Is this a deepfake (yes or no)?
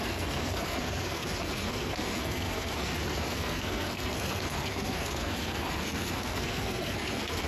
yes